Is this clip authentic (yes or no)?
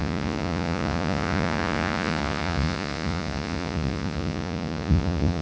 no